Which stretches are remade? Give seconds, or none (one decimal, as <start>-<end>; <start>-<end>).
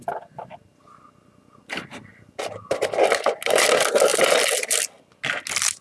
2.1-3.3; 4.1-5.0